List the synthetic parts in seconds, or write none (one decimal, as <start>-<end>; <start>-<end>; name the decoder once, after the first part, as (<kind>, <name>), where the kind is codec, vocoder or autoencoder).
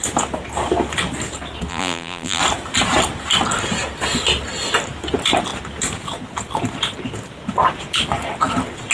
1.7-2.4 (vocoder, BigVGAN v2)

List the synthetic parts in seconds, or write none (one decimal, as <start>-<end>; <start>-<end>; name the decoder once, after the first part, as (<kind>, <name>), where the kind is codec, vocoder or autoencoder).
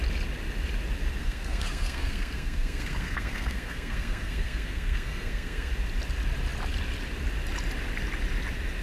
1.2-5.7 (codec, SNAC)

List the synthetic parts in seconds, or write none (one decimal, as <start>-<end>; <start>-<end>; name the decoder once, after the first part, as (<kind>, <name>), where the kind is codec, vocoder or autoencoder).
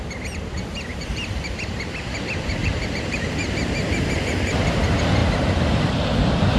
0.9-1.5 (vocoder, BigVGAN v2); 2.6-4.7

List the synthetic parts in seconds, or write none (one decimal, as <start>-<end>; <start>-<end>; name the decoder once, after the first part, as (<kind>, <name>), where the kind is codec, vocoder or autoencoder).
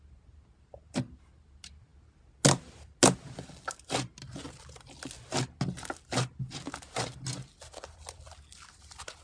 none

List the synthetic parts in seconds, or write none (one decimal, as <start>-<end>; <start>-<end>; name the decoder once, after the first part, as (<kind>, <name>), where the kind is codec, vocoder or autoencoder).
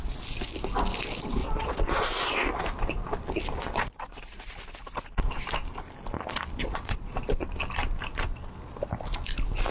1.4-2.0 (vocoder, Vocos); 6.6-7.3